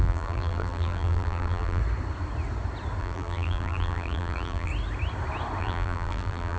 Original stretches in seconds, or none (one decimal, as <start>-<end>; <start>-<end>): 1.8-3.0; 4.7-5.6